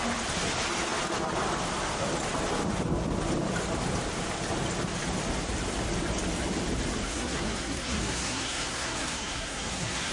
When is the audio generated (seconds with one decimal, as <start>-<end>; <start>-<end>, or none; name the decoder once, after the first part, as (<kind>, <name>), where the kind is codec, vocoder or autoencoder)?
7.1-10.1 (codec, SNAC)